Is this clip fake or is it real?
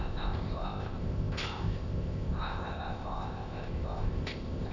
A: fake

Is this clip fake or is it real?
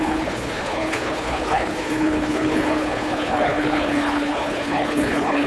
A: fake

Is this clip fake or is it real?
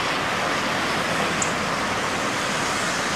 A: real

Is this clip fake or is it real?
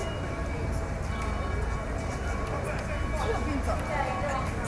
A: real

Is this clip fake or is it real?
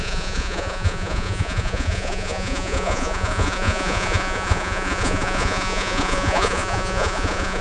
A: fake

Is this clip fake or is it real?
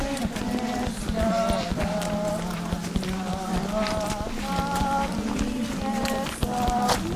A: real